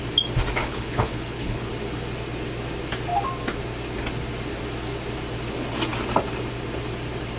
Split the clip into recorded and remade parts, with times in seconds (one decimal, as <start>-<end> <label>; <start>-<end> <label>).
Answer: 0.0-0.6 recorded; 0.6-1.7 remade; 1.7-7.4 recorded